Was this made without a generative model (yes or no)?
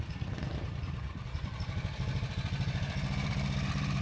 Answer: no